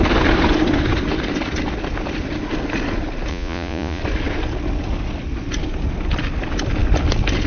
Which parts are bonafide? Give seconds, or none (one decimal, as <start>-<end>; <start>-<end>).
0.0-3.3; 4.0-7.5